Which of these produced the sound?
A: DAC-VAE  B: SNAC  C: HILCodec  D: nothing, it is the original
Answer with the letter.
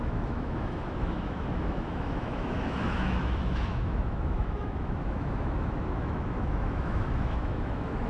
A